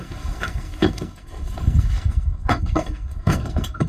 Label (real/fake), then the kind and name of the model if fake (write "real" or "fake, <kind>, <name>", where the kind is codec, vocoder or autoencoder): fake, codec, SNAC